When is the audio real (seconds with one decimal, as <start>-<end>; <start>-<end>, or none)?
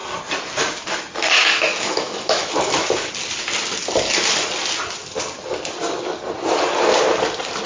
0.0-1.4; 3.1-7.7